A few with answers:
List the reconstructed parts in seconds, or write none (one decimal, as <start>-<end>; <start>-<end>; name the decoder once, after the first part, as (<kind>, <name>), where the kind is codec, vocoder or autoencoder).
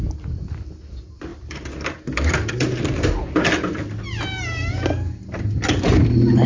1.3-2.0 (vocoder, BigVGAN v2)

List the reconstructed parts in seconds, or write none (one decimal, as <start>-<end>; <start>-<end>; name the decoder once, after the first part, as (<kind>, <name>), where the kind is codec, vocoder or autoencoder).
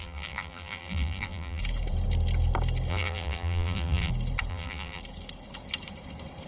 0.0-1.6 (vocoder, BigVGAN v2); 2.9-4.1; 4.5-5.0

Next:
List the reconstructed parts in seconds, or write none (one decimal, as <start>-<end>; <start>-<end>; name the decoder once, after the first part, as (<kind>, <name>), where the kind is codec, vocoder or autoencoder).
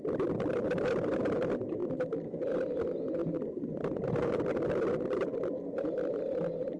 1.8-2.3 (vocoder, BigVGAN v2); 3.2-4.4